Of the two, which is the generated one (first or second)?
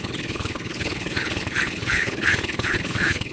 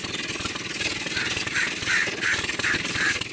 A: first